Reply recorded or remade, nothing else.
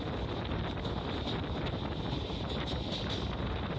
recorded